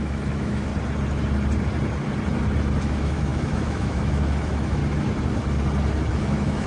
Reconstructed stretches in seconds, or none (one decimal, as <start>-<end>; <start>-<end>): 0.0-0.7; 2.8-4.8; 6.1-6.7